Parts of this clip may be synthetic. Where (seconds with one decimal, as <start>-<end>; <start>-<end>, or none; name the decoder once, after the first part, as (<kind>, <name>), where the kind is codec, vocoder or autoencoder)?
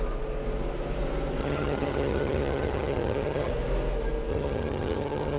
1.4-3.5 (vocoder, HiFi-GAN); 4.3-5.4